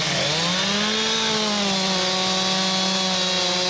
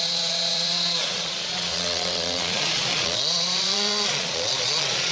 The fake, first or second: second